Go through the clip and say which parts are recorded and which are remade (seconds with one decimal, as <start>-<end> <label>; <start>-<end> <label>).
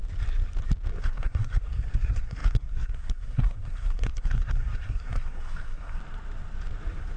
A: 0.0-1.0 recorded; 1.0-6.0 remade; 6.0-7.2 recorded